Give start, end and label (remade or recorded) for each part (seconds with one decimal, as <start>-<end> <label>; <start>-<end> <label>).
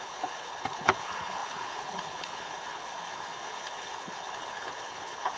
0.0-5.4 remade